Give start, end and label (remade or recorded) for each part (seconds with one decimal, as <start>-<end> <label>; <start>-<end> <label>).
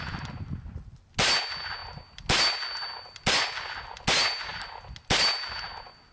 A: 0.0-6.1 recorded